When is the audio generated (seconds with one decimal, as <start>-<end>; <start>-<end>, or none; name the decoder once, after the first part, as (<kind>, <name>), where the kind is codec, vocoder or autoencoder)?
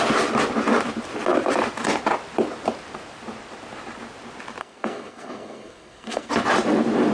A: 4.6-6.3 (codec, SNAC)